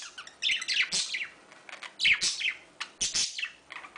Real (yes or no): yes